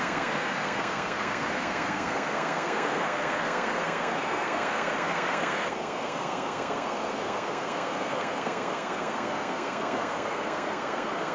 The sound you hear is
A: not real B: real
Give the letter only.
A